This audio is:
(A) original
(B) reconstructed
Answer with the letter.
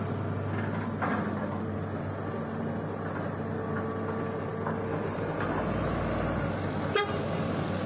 A